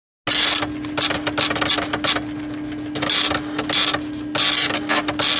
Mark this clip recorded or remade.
recorded